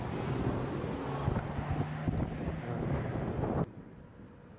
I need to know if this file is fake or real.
real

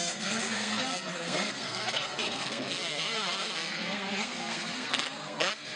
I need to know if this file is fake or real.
fake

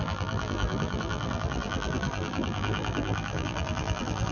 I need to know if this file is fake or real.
fake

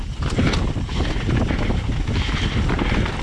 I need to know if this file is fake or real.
real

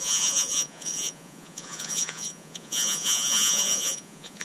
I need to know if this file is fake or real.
fake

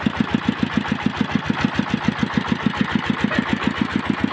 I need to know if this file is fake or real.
real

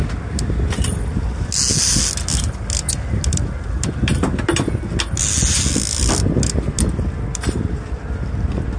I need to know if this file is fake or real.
real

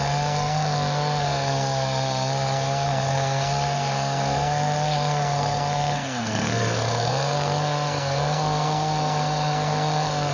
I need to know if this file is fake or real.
fake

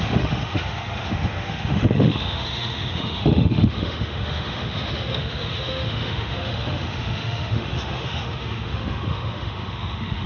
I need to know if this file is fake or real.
fake